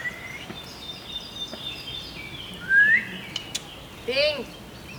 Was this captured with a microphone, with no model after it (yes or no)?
yes